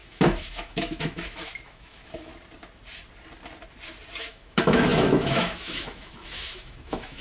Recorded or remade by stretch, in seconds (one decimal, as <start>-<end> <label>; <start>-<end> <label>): 0.0-2.3 remade; 2.3-4.2 recorded; 4.2-7.2 remade